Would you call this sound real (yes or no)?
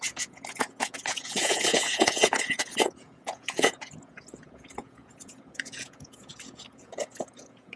no